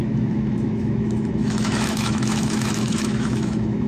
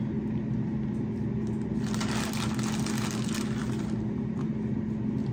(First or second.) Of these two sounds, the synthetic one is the first